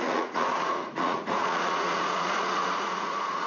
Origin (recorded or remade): remade